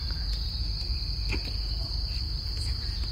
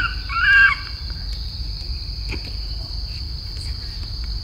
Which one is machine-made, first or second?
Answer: second